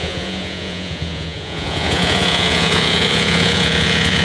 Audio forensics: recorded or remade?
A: remade